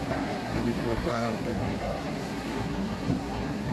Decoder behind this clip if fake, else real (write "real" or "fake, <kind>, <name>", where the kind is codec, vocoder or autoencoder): fake, codec, SNAC